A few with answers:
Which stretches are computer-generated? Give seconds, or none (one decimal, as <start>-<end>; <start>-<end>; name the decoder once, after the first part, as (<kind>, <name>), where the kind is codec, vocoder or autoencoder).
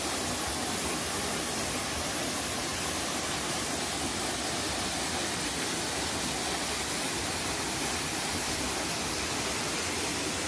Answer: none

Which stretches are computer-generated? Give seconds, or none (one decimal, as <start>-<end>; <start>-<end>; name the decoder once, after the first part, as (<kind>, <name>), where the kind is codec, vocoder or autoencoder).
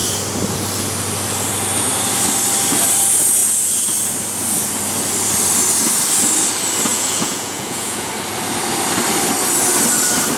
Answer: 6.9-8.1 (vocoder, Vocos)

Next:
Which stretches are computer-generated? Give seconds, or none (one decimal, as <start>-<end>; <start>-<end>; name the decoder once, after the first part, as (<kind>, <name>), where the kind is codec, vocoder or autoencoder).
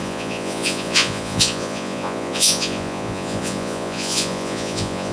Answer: 0.0-5.1 (vocoder, Vocos)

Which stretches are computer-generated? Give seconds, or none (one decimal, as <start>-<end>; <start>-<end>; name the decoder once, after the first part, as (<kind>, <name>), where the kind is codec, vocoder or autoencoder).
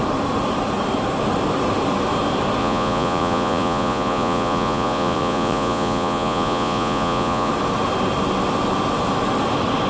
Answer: 2.6-7.5 (vocoder, Vocos)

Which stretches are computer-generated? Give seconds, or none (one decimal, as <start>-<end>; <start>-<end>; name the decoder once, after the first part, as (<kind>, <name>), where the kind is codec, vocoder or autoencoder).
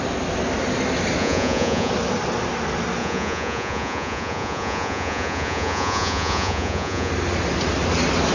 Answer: 1.2-1.9 (vocoder, Vocos); 3.0-7.1